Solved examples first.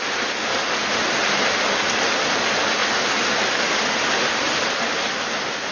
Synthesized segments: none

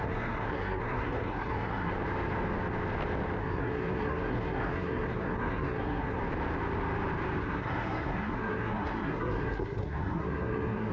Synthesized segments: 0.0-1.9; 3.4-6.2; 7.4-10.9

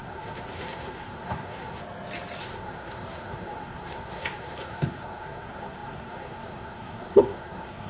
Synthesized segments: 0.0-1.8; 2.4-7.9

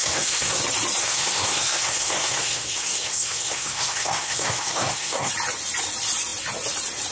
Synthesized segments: 0.0-0.6; 1.0-5.3

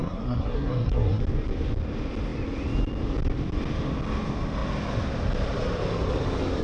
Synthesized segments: 0.0-1.2

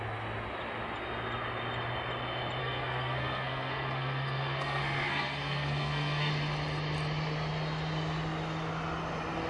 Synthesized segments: 2.6-6.3